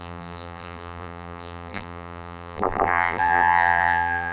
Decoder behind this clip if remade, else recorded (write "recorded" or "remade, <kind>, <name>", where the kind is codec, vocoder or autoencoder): remade, vocoder, BigVGAN v2